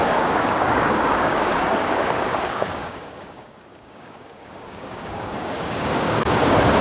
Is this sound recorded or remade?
remade